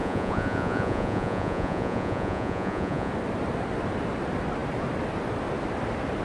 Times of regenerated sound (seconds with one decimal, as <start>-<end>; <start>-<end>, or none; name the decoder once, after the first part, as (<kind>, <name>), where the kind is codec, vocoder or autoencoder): 0.0-3.1 (vocoder, Vocos)